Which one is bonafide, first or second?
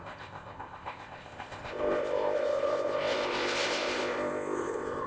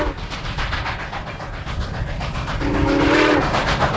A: second